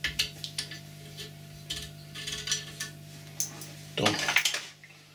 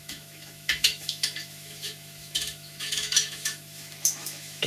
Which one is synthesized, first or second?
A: second